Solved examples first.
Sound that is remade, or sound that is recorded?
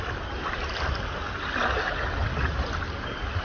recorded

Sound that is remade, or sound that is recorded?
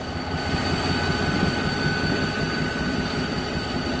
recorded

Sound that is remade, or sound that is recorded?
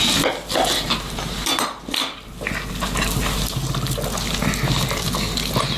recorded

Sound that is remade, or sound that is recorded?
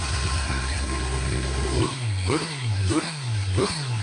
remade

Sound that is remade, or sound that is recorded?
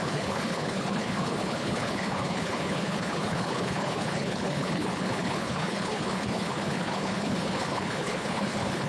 remade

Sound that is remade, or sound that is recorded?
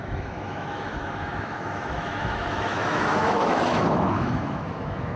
remade